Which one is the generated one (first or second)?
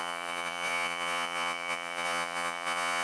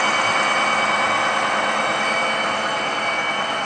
first